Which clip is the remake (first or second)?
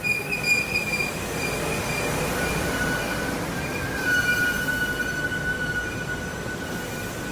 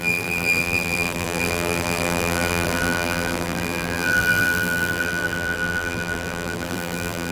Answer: second